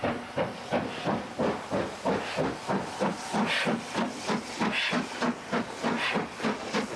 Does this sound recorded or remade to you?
recorded